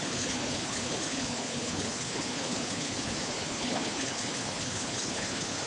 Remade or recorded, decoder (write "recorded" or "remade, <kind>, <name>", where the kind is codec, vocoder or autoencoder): remade, codec, HILCodec